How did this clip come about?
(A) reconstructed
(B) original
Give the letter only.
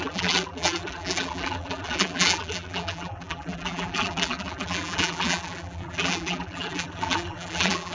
A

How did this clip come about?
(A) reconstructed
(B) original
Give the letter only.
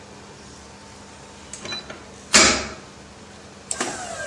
B